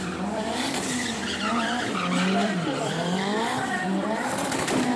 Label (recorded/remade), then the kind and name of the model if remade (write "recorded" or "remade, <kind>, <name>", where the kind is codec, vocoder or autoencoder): remade, vocoder, BigVGAN v2